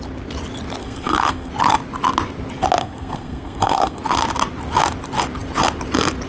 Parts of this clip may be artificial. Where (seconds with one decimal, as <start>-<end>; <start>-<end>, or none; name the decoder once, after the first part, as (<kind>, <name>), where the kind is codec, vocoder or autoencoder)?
0.8-1.5 (codec, SNAC); 2.8-4.0